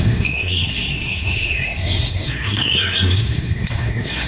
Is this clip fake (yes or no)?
yes